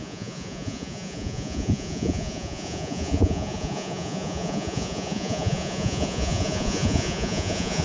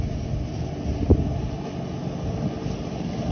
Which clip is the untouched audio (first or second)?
second